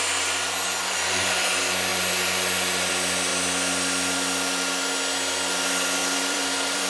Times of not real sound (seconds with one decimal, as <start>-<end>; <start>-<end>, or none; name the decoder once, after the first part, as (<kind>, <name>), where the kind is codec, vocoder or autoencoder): 1.9-2.9 (vocoder, BigVGAN v2); 6.0-6.9